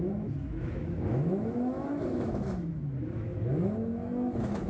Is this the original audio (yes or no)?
no